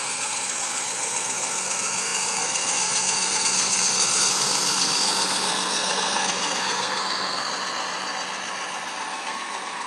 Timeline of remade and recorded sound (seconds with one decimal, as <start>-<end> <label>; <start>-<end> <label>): 0.0-7.5 remade; 7.5-9.1 recorded; 9.1-9.9 remade